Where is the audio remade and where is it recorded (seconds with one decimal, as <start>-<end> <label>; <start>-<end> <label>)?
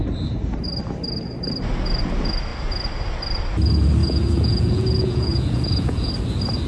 0.0-4.0 recorded; 4.0-6.1 remade; 6.1-6.7 recorded